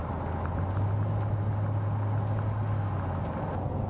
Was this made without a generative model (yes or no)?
yes